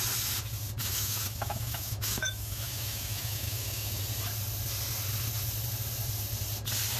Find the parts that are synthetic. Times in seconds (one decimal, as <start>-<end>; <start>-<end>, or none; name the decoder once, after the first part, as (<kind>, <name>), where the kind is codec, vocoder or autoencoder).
0.8-4.0 (autoencoder, DAC-VAE)